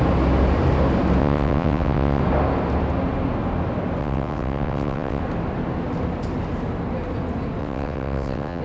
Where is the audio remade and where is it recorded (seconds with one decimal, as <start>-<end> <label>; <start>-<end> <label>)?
0.0-1.2 recorded; 1.2-2.2 remade; 2.2-4.0 recorded; 4.0-5.2 remade; 5.2-7.6 recorded; 7.6-8.6 remade